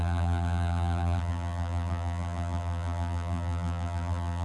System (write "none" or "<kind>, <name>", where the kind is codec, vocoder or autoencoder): vocoder, BigVGAN v2